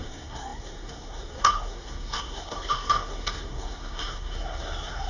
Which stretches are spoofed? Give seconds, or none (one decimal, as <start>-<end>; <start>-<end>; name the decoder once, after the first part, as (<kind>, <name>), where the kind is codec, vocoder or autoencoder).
0.0-5.1 (codec, SNAC)